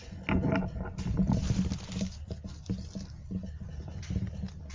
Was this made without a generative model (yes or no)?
yes